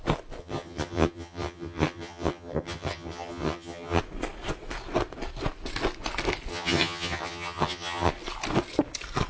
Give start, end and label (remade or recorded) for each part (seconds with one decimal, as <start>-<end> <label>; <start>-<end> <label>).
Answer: 0.0-0.4 recorded; 0.4-4.0 remade; 4.0-6.5 recorded; 6.5-8.1 remade; 8.1-9.3 recorded